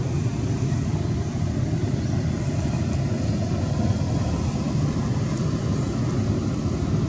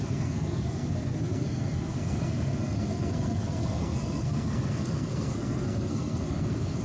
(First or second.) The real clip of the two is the first